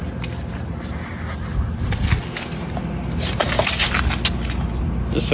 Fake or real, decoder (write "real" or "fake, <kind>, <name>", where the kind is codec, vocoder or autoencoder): real